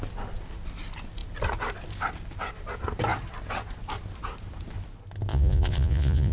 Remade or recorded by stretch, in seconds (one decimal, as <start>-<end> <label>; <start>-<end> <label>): 0.0-5.3 recorded; 5.3-6.3 remade